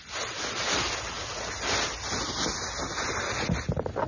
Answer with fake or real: real